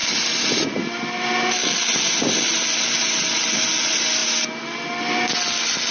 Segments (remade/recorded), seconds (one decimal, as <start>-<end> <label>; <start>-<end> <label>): 0.0-5.9 recorded